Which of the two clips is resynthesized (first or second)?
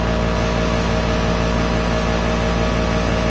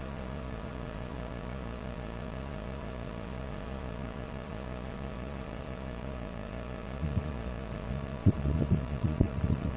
second